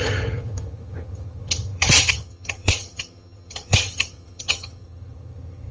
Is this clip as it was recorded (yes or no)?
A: no